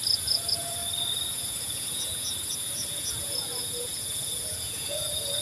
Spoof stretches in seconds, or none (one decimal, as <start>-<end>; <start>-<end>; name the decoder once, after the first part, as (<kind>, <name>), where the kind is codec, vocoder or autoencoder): 0.0-0.8 (vocoder, Vocos); 1.3-5.4